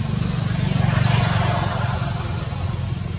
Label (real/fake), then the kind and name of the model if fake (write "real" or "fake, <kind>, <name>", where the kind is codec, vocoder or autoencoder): real